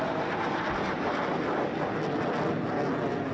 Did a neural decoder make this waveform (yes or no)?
no